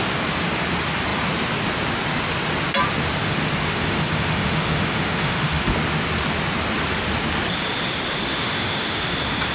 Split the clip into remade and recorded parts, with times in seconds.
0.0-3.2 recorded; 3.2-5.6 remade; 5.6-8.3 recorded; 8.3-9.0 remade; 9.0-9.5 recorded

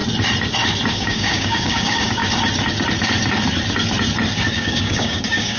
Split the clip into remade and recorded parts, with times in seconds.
0.0-0.9 recorded; 0.9-2.2 remade; 2.2-4.5 recorded; 4.5-5.6 remade

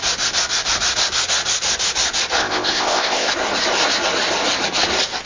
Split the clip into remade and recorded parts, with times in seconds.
0.0-2.4 recorded; 2.4-3.3 remade; 3.3-5.3 recorded

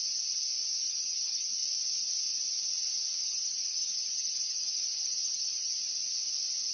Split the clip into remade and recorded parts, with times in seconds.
0.0-0.8 recorded; 0.8-1.6 remade; 1.6-3.2 recorded; 3.2-5.7 remade; 5.7-6.7 recorded

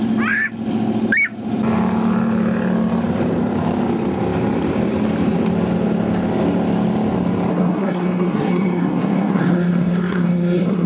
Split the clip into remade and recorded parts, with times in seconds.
0.0-7.5 recorded; 7.5-10.9 remade

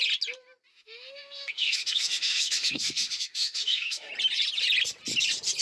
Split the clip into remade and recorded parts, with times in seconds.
0.0-0.7 recorded; 0.7-4.1 remade; 4.1-5.6 recorded

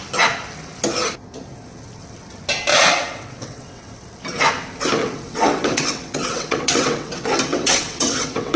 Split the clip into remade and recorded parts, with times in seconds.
0.0-2.7 recorded; 2.7-3.9 remade; 3.9-5.0 recorded; 5.0-7.1 remade; 7.1-7.5 recorded; 7.5-8.6 remade

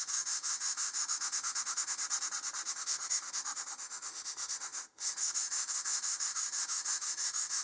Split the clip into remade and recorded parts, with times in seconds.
0.0-2.0 remade; 2.0-2.7 recorded; 2.7-7.6 remade